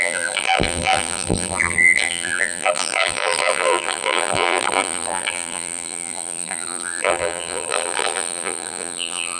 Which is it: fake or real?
fake